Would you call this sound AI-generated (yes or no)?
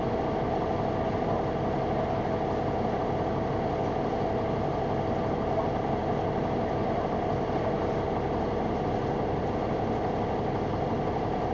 no